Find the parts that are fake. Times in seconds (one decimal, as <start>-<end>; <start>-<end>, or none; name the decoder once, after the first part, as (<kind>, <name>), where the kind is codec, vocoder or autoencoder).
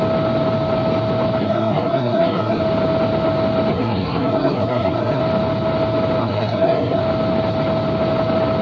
1.4-2.6 (codec, SNAC); 3.7-5.2; 6.2-7.0